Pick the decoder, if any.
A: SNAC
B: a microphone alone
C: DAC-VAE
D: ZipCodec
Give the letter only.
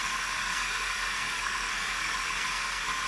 A